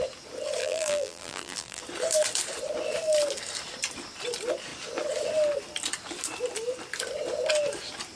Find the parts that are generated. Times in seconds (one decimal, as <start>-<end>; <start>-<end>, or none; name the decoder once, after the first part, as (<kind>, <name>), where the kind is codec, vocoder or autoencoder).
0.6-1.8 (vocoder, BigVGAN v2)